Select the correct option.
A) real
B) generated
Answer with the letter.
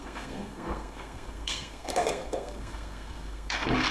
B